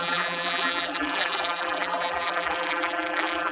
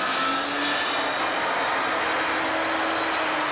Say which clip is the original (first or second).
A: second